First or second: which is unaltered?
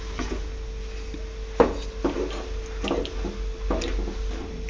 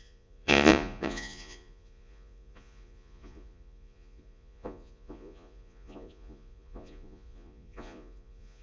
first